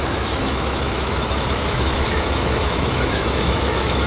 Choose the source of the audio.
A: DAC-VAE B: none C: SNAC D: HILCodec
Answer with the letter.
A